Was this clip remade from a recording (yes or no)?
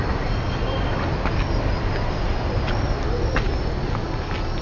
no